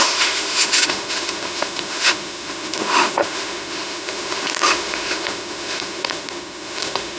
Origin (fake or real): fake